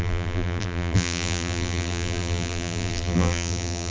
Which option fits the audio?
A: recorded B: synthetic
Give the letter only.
B